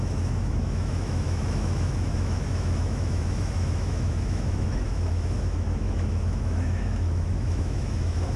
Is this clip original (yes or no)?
no